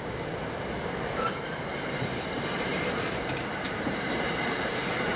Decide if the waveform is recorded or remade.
remade